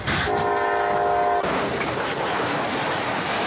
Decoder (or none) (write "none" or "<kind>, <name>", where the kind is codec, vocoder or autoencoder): none